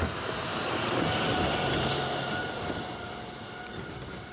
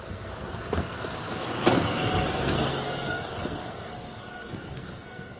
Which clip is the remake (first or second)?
second